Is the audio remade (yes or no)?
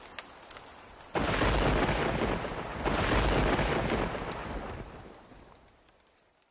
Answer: no